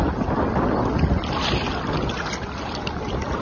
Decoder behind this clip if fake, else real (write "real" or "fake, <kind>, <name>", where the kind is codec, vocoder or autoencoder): real